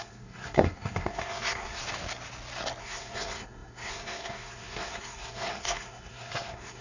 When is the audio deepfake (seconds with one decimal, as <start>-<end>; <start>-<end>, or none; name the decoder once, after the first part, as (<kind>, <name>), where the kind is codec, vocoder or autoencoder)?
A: 0.0-1.8 (codec, SNAC); 2.8-6.8